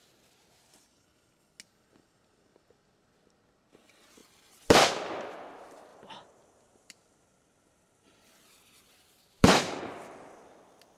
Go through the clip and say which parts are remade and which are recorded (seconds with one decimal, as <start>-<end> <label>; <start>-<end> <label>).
0.0-4.2 recorded; 4.2-4.9 remade; 4.9-5.9 recorded; 5.9-9.8 remade; 9.8-11.0 recorded